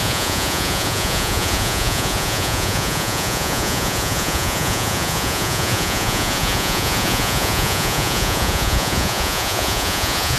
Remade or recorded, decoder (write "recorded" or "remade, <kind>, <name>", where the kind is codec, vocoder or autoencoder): remade, vocoder, Vocos